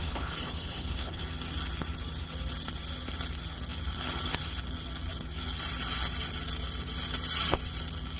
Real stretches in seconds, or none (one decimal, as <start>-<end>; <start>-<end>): 1.2-8.2

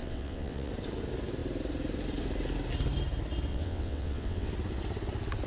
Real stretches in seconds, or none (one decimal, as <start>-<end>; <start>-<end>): 0.7-3.5; 4.5-5.5

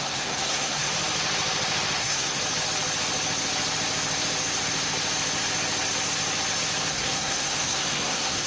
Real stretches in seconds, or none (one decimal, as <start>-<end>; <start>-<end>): 0.9-2.0; 2.4-6.9

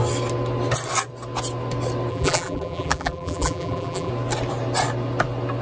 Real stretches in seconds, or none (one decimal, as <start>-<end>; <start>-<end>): 0.0-2.1; 4.1-5.6

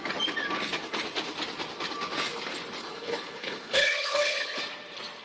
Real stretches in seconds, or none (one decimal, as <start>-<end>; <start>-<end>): 0.0-2.8; 4.6-5.2